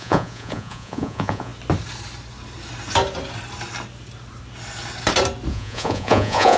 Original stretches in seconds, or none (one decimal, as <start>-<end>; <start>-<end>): 1.5-5.5